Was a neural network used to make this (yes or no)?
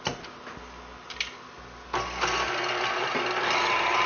no